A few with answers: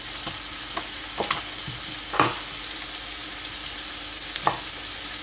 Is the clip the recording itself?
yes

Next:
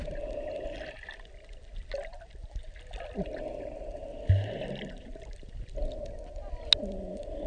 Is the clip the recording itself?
yes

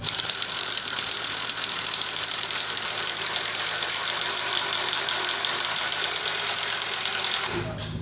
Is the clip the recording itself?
no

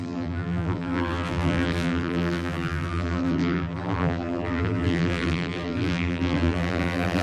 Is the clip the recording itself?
no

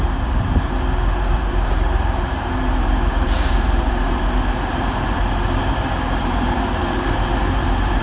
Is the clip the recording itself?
no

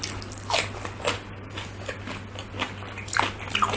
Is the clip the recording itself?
yes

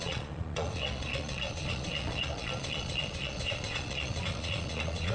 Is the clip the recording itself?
no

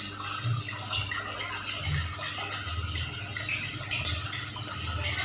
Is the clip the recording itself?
yes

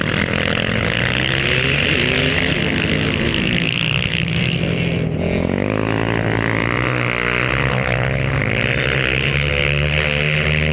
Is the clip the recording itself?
yes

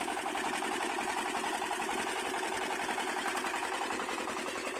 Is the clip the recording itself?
yes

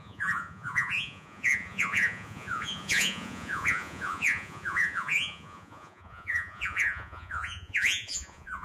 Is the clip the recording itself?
no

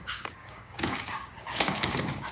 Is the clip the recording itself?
no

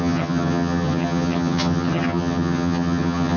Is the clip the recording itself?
no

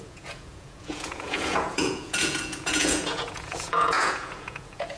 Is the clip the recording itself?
no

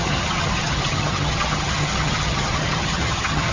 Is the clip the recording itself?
no